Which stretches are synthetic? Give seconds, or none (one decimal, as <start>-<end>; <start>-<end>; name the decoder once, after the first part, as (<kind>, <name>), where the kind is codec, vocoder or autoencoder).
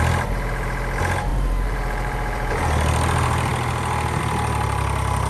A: 1.3-2.5 (vocoder, BigVGAN v2)